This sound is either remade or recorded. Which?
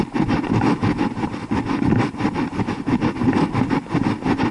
recorded